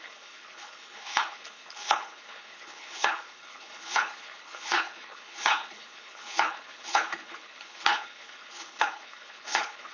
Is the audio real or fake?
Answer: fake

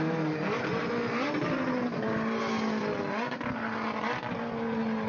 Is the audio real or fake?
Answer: real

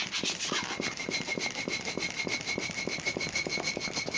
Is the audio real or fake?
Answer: real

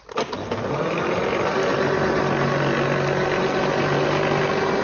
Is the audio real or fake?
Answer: real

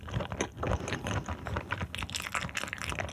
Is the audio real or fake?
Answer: real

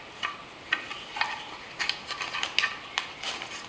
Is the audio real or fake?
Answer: real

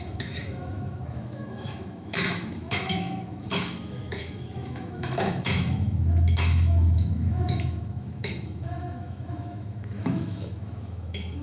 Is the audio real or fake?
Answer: fake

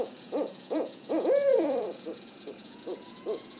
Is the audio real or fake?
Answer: fake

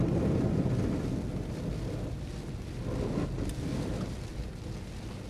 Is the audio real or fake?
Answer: real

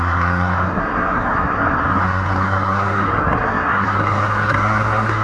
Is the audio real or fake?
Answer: fake